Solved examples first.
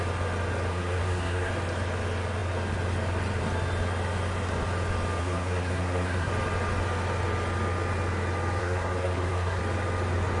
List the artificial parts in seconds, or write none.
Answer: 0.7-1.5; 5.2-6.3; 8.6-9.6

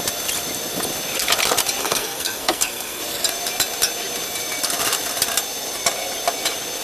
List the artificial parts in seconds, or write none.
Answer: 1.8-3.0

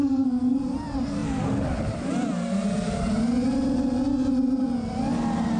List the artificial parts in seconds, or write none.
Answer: 0.0-0.6